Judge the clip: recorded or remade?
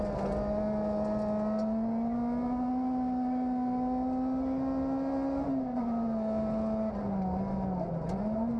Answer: recorded